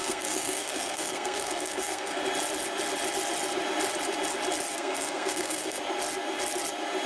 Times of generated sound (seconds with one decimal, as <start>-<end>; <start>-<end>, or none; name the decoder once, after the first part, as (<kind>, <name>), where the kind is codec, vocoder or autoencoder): 0.0-2.2 (codec, SNAC); 4.7-5.8

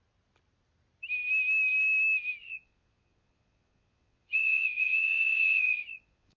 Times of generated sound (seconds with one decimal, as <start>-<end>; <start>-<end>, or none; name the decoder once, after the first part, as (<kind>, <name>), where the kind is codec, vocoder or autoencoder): 2.4-6.4 (vocoder, Vocos)

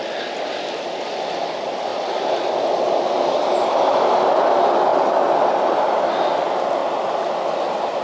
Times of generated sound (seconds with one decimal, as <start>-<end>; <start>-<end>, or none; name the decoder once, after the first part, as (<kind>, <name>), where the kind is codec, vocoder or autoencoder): none

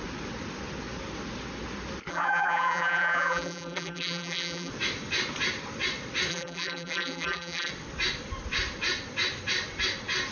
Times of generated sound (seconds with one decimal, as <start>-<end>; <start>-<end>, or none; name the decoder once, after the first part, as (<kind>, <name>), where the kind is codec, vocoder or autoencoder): 2.1-4.7 (vocoder, BigVGAN v2); 6.3-7.7

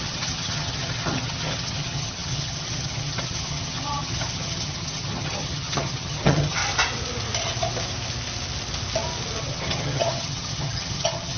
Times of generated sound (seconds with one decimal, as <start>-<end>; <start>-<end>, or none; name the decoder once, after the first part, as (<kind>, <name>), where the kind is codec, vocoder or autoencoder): 0.0-6.6 (vocoder, HiFi-GAN); 9.4-11.4

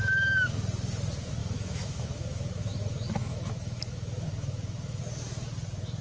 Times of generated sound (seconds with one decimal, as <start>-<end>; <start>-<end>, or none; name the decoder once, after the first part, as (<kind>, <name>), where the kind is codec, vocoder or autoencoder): 1.4-5.0 (autoencoder, DAC-VAE)

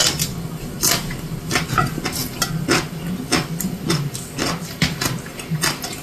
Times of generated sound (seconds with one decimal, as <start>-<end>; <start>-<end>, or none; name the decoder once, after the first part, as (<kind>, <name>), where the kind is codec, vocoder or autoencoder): none